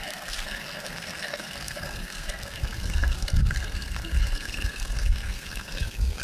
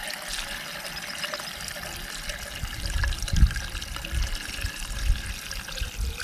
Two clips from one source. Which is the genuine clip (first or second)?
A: second